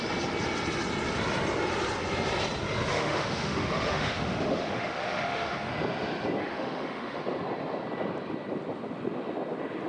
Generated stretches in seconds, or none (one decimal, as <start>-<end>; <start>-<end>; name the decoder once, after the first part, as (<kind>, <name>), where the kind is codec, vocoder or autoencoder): 2.9-5.7 (autoencoder, DAC-VAE); 6.4-7.2

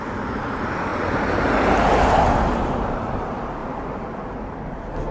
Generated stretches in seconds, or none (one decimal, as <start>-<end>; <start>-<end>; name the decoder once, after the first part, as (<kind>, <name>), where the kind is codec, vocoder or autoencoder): 0.0-0.9 (vocoder, BigVGAN v2); 2.5-3.6

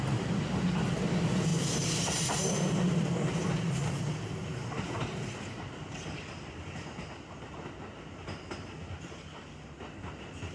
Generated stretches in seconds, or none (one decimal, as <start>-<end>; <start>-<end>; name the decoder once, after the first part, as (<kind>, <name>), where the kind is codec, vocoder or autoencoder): none

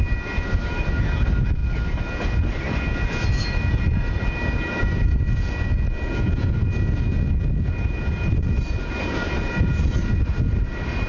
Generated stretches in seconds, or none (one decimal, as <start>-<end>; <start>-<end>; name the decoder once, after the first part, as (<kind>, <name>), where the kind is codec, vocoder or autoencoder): none